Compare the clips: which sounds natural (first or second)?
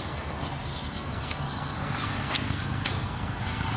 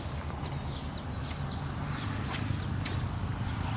second